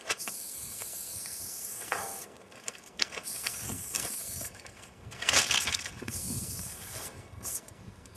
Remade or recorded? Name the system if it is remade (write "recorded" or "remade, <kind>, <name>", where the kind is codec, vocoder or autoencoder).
remade, codec, SNAC